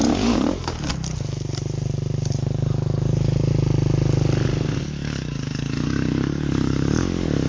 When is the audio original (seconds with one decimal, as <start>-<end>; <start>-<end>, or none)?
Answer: 0.9-2.4; 3.5-4.8

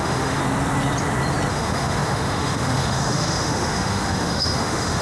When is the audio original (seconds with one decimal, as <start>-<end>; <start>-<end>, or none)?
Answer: 0.4-1.5

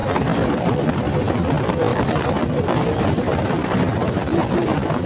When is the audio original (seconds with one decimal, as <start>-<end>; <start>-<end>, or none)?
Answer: 0.8-1.9